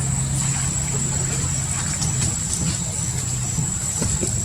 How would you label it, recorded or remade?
recorded